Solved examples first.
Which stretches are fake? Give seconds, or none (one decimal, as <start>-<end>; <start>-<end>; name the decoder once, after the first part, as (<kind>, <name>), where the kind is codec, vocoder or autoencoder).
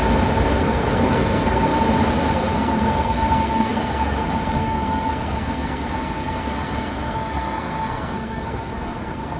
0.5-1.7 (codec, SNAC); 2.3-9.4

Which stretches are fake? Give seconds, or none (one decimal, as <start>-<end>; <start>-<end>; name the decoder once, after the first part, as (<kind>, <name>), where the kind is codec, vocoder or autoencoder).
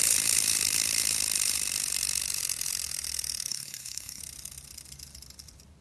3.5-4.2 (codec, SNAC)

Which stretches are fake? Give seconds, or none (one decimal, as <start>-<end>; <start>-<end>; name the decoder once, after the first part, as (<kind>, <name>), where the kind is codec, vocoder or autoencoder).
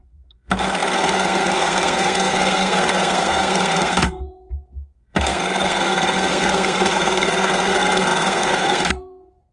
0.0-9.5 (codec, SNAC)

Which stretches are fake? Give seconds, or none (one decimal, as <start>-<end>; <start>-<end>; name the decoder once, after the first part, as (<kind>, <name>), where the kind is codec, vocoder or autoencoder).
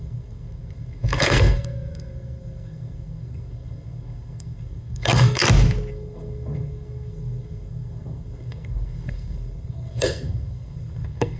0.0-5.4 (codec, SNAC); 5.9-11.4